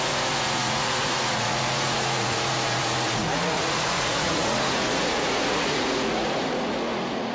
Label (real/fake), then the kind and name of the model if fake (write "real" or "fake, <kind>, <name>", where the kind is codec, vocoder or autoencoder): fake, vocoder, Vocos